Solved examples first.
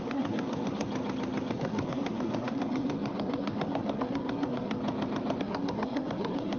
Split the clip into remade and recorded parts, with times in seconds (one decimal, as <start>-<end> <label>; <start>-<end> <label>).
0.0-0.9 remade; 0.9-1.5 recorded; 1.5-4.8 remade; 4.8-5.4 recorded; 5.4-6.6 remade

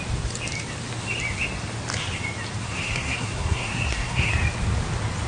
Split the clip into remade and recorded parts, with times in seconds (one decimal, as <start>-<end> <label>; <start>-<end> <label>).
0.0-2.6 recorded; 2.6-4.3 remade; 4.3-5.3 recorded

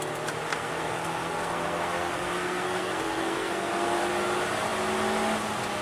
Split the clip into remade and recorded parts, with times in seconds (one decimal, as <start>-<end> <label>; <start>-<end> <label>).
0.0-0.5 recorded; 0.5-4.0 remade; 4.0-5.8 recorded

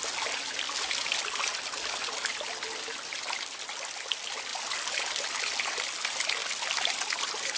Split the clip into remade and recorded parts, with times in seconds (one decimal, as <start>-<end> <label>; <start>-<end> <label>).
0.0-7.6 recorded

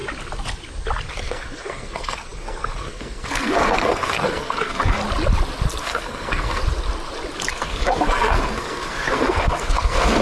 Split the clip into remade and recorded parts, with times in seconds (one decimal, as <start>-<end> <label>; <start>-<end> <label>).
0.0-1.1 recorded; 1.1-5.0 remade; 5.0-5.8 recorded; 5.8-6.6 remade; 6.6-7.5 recorded; 7.5-10.2 remade

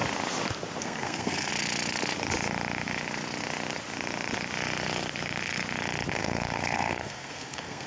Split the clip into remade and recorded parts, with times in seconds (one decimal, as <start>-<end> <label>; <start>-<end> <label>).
0.0-0.8 recorded; 0.8-1.5 remade; 1.5-6.1 recorded; 6.1-7.9 remade

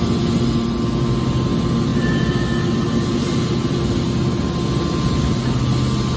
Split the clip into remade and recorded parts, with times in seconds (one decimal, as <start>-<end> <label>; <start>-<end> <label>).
0.0-6.2 recorded